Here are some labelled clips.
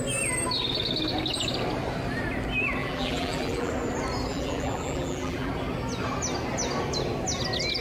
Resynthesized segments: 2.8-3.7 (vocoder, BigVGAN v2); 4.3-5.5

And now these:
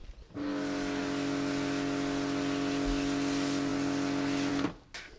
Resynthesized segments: none